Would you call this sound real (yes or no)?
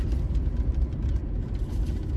yes